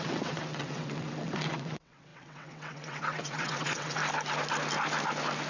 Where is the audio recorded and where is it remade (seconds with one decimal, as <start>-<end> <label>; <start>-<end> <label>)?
0.0-4.0 remade; 4.0-5.5 recorded